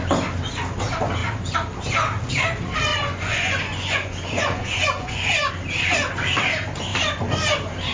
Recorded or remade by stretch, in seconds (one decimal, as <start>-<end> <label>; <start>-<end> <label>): 0.0-2.9 recorded; 2.9-5.5 remade; 5.5-7.9 recorded